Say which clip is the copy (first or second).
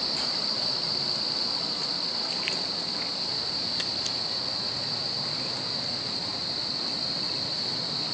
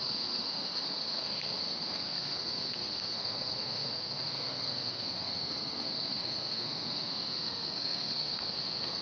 second